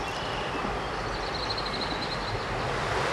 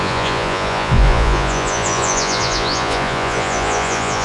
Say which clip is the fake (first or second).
second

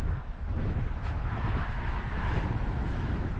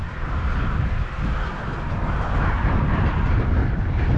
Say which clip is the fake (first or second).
first